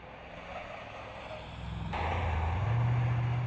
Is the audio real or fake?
real